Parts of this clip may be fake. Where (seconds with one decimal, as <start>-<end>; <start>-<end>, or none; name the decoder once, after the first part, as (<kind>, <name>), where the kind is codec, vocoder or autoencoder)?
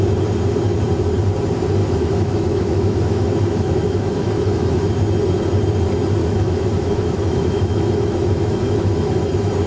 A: 1.8-4.9 (autoencoder, DAC-VAE); 6.2-9.1